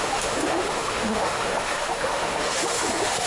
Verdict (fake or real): fake